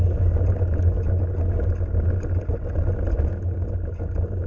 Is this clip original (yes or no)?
yes